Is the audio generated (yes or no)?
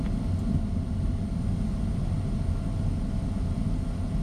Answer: no